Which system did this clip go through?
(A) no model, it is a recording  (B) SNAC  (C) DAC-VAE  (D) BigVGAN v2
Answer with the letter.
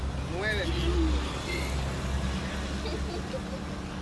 A